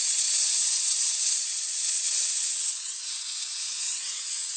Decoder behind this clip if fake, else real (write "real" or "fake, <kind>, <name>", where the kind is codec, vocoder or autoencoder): fake, vocoder, WaveNeXt